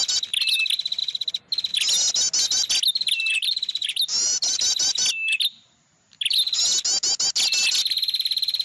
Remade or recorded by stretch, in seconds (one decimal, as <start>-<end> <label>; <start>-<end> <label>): 0.0-3.3 recorded; 3.3-4.6 remade; 4.6-8.6 recorded